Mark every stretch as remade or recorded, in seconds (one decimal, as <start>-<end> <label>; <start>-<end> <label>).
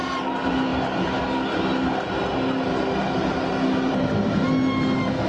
0.0-5.3 recorded